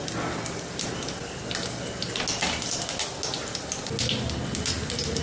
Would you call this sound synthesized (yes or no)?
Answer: no